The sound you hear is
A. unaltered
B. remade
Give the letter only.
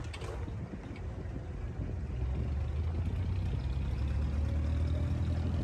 A